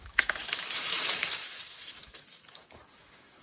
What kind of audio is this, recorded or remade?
remade